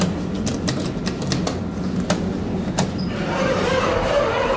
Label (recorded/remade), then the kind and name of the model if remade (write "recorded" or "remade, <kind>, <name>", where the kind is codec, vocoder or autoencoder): recorded